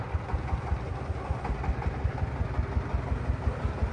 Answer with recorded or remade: recorded